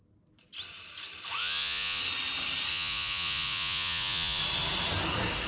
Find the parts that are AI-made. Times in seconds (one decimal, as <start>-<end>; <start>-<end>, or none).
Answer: 1.4-2.0; 2.7-4.4